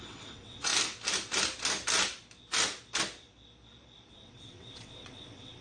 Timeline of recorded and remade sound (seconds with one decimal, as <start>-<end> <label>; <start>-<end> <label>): 0.0-0.7 remade; 0.7-4.1 recorded; 4.1-5.6 remade